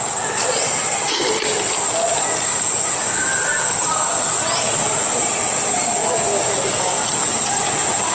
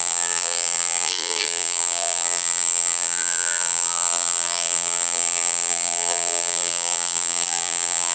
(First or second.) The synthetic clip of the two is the second